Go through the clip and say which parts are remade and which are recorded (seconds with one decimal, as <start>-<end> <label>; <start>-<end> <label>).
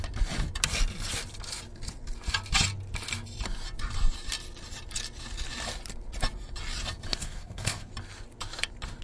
0.0-7.2 recorded; 7.2-7.9 remade; 7.9-9.0 recorded